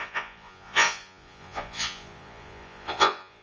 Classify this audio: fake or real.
fake